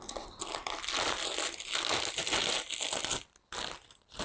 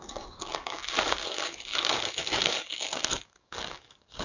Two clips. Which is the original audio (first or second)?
first